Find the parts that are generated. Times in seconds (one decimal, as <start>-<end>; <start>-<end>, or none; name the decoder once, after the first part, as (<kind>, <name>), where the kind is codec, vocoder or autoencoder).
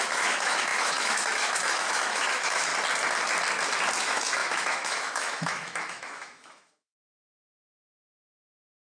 0.0-2.7 (autoencoder, DAC-VAE); 4.0-8.8